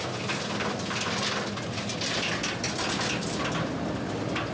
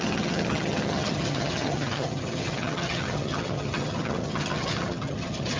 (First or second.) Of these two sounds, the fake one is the second